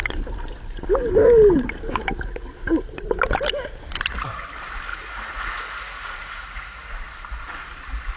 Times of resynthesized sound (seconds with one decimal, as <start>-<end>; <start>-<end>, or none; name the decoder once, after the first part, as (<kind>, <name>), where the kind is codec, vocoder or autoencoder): 4.9-6.9 (vocoder, Vocos)